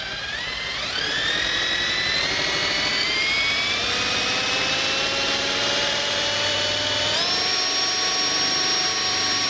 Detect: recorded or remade remade